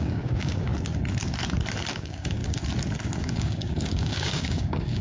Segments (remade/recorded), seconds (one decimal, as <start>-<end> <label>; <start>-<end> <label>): 0.0-0.7 remade; 0.7-1.9 recorded; 1.9-2.4 remade; 2.4-3.2 recorded; 3.2-5.0 remade